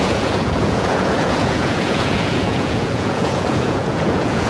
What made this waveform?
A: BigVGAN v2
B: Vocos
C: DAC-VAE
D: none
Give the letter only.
B